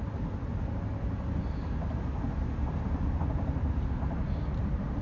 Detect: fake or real real